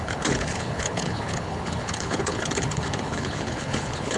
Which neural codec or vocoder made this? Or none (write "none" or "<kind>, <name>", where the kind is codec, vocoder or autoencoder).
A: codec, HILCodec